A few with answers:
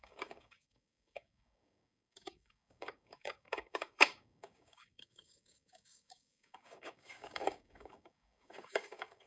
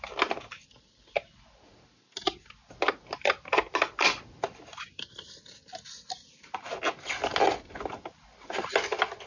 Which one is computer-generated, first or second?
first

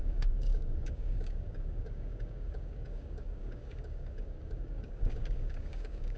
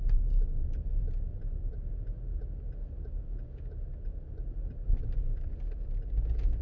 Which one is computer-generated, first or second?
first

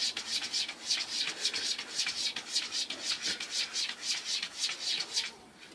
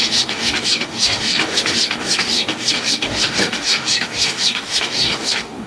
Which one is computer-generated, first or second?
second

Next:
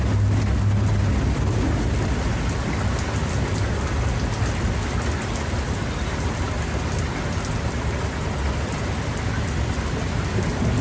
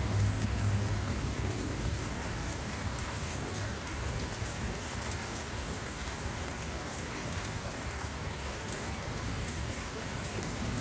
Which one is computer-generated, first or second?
second